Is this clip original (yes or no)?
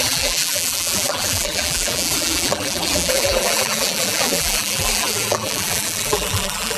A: no